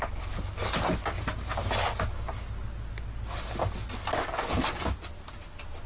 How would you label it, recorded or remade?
recorded